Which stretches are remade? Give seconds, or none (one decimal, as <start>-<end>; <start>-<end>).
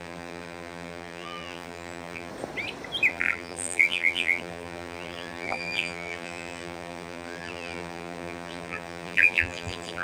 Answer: 0.0-2.3; 3.1-10.0